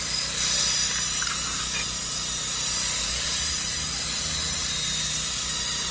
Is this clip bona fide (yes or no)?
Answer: yes